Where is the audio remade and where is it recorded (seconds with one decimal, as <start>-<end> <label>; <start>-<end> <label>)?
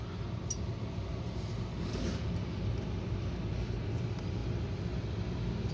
0.0-1.7 recorded; 1.7-2.3 remade; 2.3-5.7 recorded